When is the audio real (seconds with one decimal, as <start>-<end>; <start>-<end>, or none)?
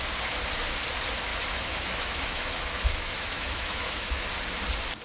0.0-1.3; 4.3-5.0